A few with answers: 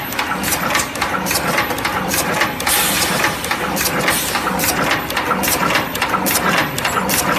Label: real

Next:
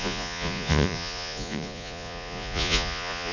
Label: fake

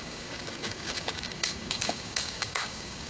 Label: fake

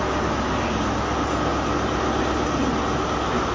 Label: real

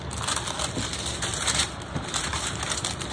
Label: real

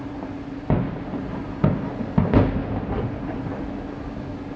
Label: real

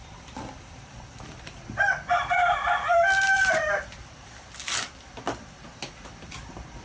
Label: fake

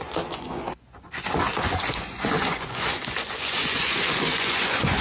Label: fake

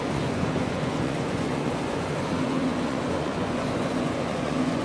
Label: fake